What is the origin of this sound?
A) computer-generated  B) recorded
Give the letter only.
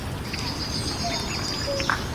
B